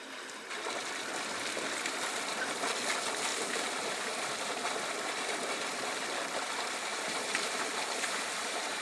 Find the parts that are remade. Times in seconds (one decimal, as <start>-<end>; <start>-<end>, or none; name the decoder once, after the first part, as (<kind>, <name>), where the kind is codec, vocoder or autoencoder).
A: 3.3-4.0 (vocoder, BigVGAN v2); 6.9-8.8